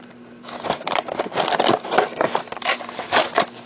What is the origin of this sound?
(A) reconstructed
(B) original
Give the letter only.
B